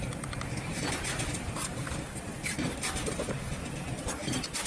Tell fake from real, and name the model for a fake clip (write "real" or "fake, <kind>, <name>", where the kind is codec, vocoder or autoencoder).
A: real